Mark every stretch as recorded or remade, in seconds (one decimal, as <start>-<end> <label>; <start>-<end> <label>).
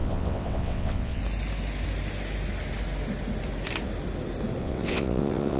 0.0-1.2 remade; 1.2-4.6 recorded; 4.6-5.6 remade